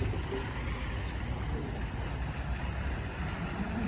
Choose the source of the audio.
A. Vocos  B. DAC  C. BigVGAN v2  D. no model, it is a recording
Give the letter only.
D